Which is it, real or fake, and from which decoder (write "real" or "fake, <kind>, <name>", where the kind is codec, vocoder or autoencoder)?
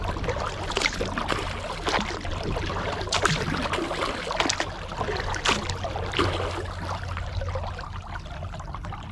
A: real